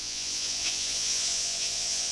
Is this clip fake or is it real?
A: fake